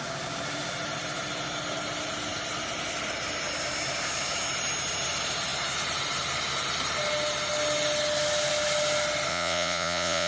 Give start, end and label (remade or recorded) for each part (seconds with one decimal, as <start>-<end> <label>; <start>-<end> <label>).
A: 0.0-9.3 recorded; 9.3-10.3 remade